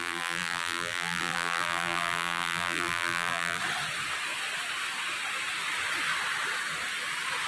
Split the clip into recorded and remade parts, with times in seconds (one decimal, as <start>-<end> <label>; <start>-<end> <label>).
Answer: 0.0-3.6 remade; 3.6-7.5 recorded